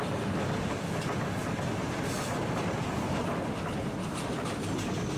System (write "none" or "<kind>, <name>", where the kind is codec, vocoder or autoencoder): none